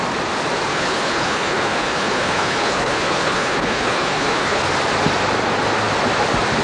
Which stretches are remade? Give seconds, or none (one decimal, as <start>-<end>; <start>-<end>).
0.7-4.6